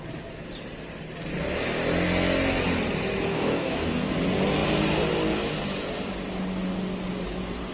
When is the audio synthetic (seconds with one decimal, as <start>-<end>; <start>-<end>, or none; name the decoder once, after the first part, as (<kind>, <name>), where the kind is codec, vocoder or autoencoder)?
3.3-4.1 (codec, DAC)